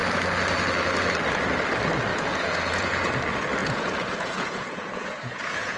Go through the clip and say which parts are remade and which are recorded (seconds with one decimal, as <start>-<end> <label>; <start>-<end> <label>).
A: 0.0-2.1 recorded; 2.1-3.1 remade; 3.1-3.6 recorded; 3.6-5.8 remade